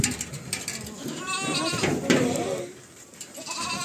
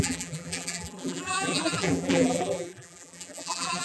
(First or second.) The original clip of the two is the first